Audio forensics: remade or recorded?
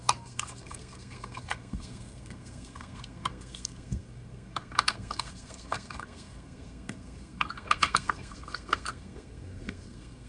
remade